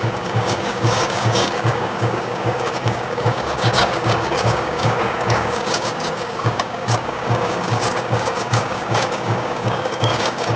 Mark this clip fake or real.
fake